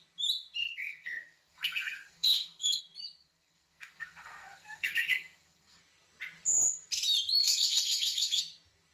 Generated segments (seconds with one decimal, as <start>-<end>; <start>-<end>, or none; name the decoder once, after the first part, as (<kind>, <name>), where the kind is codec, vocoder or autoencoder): 0.6-2.8 (codec, SNAC); 3.2-5.8; 7.4-8.4